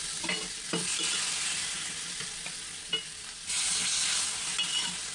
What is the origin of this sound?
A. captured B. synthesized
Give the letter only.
A